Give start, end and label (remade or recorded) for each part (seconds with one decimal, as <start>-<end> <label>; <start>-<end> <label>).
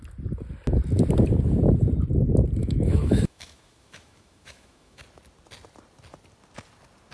0.0-2.6 recorded; 2.6-5.0 remade; 5.0-7.1 recorded